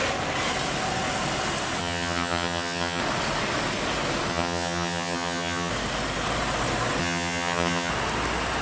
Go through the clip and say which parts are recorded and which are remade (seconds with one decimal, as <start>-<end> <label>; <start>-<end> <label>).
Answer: 0.0-1.8 recorded; 1.8-3.0 remade; 3.0-4.3 recorded; 4.3-5.7 remade; 5.7-7.0 recorded; 7.0-7.9 remade; 7.9-8.6 recorded